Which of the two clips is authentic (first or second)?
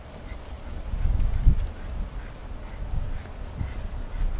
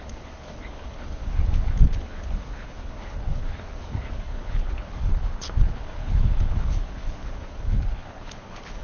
first